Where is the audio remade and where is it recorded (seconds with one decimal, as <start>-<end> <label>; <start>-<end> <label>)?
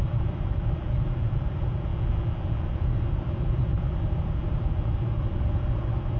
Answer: 0.0-1.9 remade; 1.9-2.6 recorded; 2.6-6.2 remade